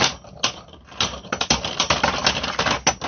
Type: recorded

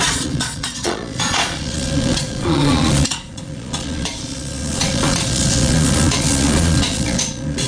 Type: remade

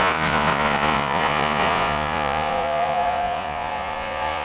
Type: remade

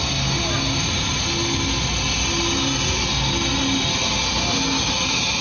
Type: recorded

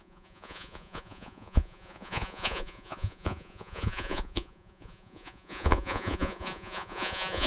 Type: remade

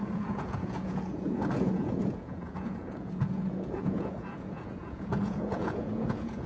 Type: remade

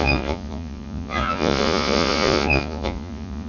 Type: remade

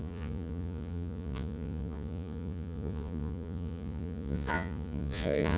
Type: remade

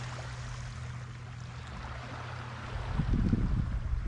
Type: recorded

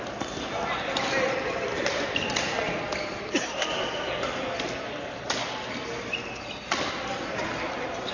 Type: recorded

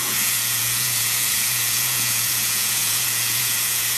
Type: remade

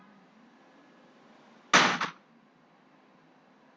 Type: recorded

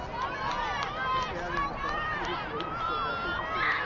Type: recorded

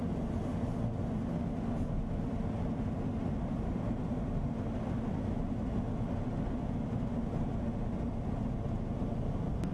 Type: recorded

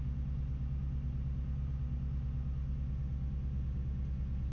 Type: recorded